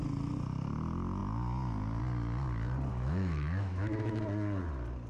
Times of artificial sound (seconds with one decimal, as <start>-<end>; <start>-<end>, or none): 2.9-4.2